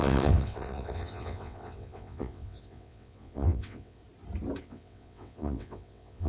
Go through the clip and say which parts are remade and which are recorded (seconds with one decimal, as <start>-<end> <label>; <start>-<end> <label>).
0.0-4.0 remade; 4.0-4.6 recorded; 4.6-6.3 remade